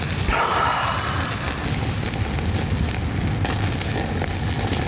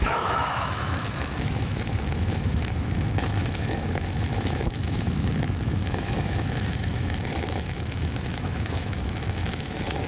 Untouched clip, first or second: first